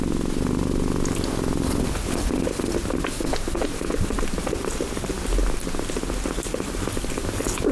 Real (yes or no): yes